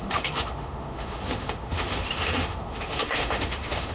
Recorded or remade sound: remade